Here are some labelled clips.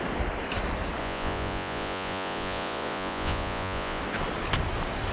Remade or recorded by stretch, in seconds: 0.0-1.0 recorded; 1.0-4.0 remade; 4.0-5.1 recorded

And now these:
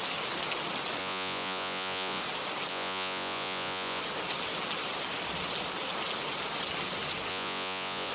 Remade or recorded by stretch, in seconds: 0.0-1.0 recorded; 1.0-2.2 remade; 2.2-2.7 recorded; 2.7-4.0 remade; 4.0-7.3 recorded; 7.3-8.1 remade